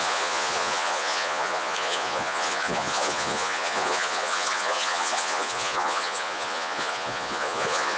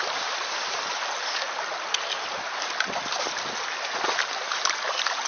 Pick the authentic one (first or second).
second